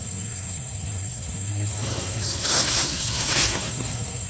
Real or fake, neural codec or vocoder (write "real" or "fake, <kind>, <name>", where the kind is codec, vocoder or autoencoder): fake, codec, SNAC